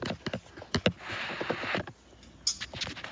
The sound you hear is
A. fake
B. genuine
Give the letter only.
B